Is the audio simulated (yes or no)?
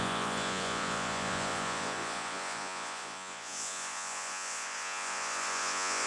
yes